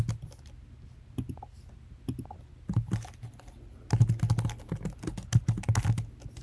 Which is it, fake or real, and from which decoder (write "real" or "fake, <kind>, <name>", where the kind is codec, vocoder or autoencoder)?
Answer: real